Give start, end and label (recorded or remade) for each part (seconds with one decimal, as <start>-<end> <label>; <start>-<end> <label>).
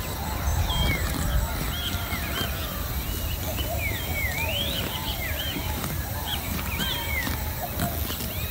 0.0-0.5 recorded; 0.5-1.3 remade; 1.3-5.0 recorded; 5.0-7.1 remade; 7.1-8.5 recorded